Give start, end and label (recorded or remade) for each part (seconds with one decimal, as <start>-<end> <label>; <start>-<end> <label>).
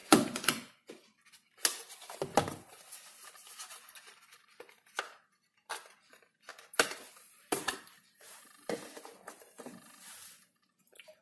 0.0-0.9 remade; 0.9-11.2 recorded